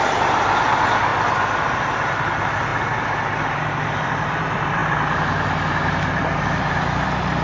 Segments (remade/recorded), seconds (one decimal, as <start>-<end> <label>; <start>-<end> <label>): 0.0-1.1 remade; 1.1-2.1 recorded; 2.1-2.7 remade; 2.7-3.2 recorded; 3.2-4.8 remade; 4.8-6.0 recorded; 6.0-7.4 remade